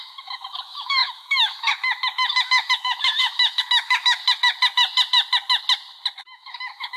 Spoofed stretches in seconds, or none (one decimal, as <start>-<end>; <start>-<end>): 0.0-4.2; 6.2-7.0